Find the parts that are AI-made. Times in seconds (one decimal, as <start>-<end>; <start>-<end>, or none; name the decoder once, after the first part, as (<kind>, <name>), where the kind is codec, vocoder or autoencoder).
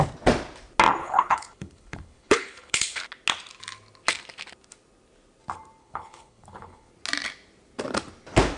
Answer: 1.0-3.0 (codec, HILCodec); 5.8-6.9